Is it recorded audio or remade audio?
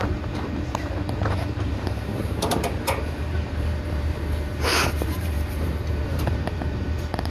remade